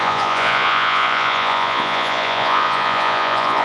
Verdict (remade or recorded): remade